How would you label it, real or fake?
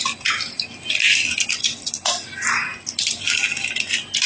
real